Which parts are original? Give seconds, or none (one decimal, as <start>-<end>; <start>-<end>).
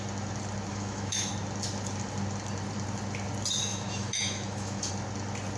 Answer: 0.0-0.7; 1.3-3.7; 4.9-5.6